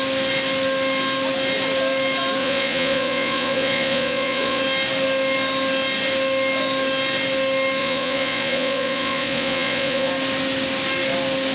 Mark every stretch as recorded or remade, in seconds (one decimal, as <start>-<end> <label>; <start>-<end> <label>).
0.0-2.4 recorded; 2.4-4.6 remade; 4.6-7.8 recorded; 7.8-10.1 remade; 10.1-11.5 recorded